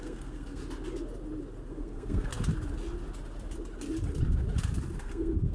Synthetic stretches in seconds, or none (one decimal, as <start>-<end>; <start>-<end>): 0.0-0.6; 1.7-2.3; 5.0-5.5